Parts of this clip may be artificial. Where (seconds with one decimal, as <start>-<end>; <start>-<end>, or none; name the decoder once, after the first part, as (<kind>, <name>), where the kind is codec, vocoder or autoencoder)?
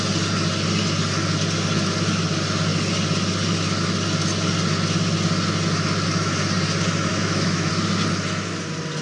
7.1-7.7 (autoencoder, DAC-VAE)